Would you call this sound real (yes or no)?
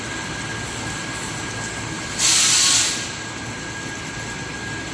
yes